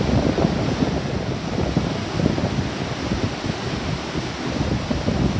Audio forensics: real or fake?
real